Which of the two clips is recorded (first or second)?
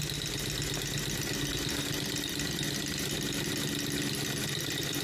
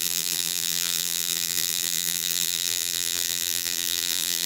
first